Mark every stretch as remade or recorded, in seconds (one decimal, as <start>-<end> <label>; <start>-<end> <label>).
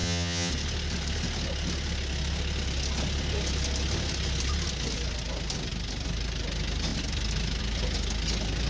0.0-0.5 remade; 0.5-8.7 recorded